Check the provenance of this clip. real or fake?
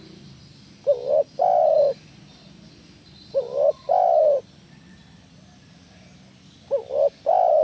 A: real